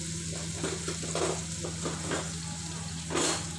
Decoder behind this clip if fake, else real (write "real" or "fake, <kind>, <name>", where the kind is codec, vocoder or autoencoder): real